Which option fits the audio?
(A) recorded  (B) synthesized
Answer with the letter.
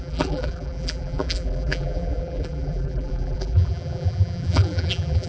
B